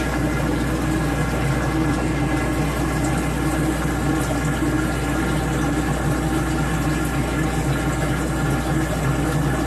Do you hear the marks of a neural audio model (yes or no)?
no